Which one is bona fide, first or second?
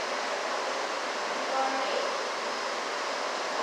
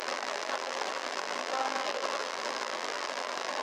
first